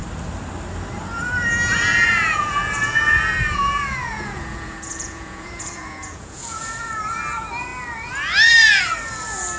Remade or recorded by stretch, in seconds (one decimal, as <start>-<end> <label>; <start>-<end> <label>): 0.0-1.9 recorded; 1.9-7.0 remade; 7.0-9.6 recorded